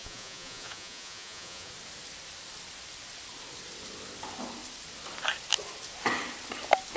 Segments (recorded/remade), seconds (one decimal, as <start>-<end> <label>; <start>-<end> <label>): 0.0-1.7 remade; 1.7-7.0 recorded